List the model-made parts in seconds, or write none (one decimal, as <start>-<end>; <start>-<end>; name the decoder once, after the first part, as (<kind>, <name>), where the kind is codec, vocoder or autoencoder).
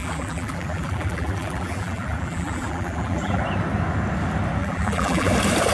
0.0-3.4 (vocoder, BigVGAN v2); 4.6-5.3